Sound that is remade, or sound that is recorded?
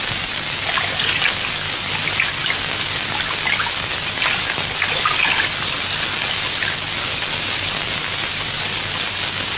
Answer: recorded